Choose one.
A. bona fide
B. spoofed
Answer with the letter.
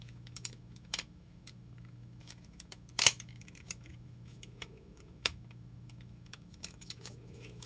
B